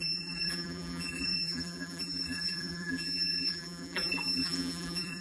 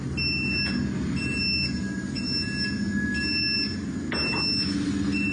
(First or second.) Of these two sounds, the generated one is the first